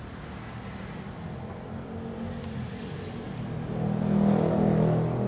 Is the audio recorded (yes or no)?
yes